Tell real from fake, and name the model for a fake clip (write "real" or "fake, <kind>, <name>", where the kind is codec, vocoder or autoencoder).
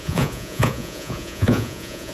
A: fake, vocoder, Vocos